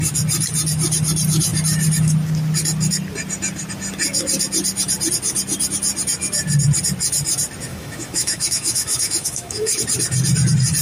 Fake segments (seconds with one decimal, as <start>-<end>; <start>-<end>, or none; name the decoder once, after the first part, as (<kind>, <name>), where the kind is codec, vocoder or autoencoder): 7.7-9.8 (autoencoder, DAC-VAE)